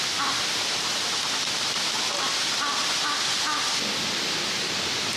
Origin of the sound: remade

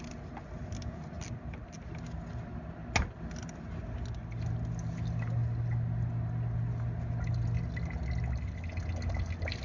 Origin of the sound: recorded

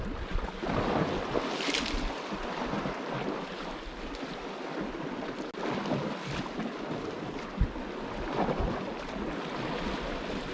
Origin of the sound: recorded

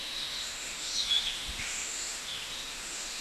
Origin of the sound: remade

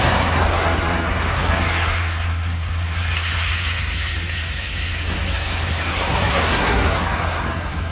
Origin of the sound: remade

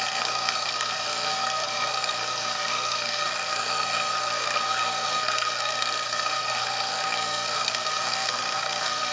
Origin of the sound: remade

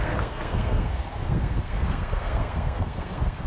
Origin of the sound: remade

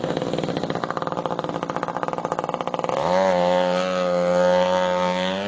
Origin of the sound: recorded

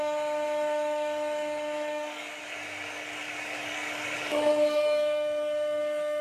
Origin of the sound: remade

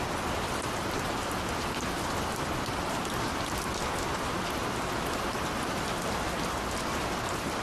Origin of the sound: recorded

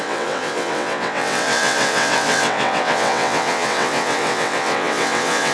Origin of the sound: remade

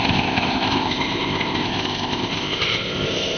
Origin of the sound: remade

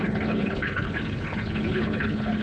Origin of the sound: remade